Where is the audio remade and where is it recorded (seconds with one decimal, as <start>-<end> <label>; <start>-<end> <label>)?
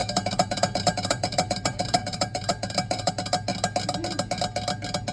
0.0-3.1 remade; 3.1-5.1 recorded